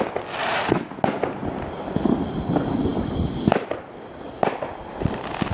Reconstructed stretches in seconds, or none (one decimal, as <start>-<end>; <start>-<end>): 0.4-1.0

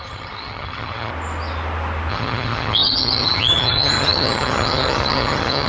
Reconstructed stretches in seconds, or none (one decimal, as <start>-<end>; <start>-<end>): 0.0-1.1; 2.1-5.7